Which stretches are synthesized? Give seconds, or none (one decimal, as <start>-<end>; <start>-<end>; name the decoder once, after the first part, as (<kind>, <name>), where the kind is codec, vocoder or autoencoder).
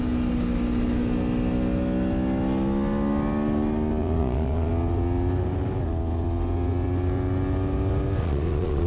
4.0-4.7 (vocoder, Vocos); 8.2-8.9